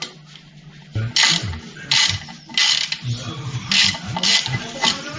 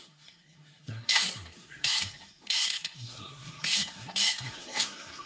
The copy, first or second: second